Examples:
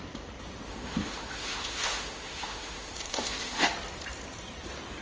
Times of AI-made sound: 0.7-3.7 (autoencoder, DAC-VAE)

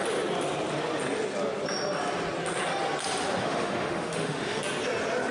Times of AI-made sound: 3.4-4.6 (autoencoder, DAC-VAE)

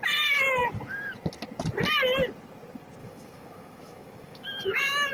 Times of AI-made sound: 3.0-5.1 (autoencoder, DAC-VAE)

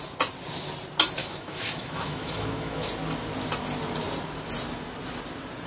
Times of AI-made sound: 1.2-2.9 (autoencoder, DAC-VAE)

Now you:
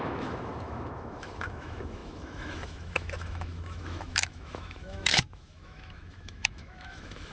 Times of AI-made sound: 0.0-7.3 (autoencoder, DAC-VAE)

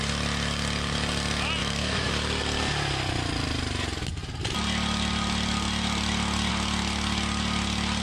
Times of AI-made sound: 1.6-2.1 (autoencoder, DAC-VAE)

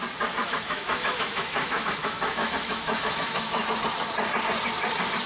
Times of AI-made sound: 0.4-3.6 (autoencoder, DAC-VAE)

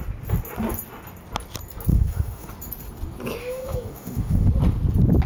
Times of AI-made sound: 1.9-2.5 (autoencoder, DAC-VAE); 3.4-4.5